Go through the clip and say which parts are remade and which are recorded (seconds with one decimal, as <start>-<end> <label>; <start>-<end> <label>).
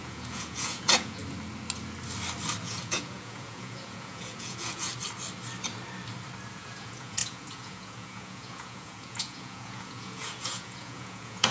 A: 0.0-1.2 remade; 1.2-2.6 recorded; 2.6-4.9 remade; 4.9-6.5 recorded; 6.5-11.5 remade